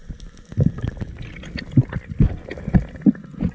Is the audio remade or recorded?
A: recorded